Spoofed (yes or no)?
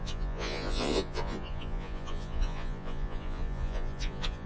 yes